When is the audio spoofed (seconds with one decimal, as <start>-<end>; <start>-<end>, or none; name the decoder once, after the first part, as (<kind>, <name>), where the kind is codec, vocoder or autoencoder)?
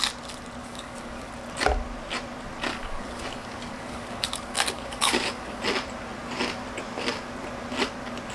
0.6-1.3 (codec, DAC); 2.7-5.6